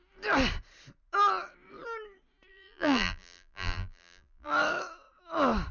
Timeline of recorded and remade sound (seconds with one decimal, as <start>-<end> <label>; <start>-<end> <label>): 0.0-2.5 recorded; 2.5-4.5 remade; 4.5-5.7 recorded